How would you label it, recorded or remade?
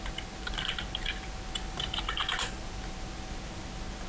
recorded